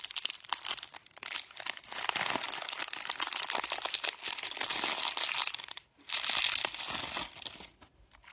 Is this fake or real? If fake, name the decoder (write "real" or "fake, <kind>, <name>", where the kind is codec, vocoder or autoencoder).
real